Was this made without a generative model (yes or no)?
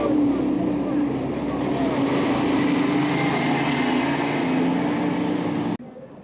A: yes